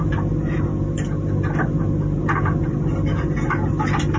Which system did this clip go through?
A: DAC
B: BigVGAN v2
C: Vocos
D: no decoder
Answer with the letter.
D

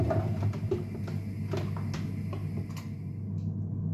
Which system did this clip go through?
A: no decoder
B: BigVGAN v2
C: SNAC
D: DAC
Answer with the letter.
A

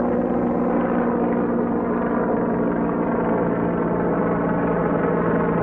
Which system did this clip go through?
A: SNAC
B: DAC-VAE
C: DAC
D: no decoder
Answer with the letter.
D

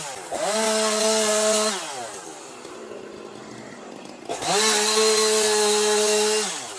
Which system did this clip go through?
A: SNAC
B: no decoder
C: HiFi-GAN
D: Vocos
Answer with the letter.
B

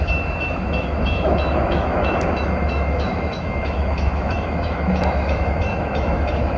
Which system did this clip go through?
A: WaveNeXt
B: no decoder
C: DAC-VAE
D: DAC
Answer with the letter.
C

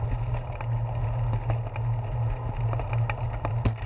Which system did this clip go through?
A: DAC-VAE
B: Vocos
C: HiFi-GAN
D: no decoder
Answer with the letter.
D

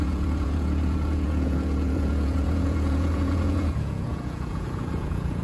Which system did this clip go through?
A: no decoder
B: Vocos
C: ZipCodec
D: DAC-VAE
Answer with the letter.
B